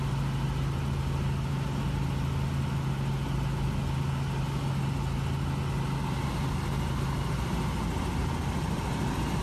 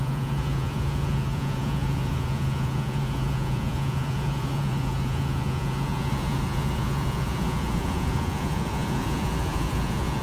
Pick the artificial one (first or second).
second